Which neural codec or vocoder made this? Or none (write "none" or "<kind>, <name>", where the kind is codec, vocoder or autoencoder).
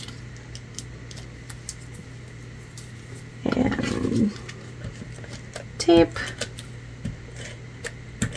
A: none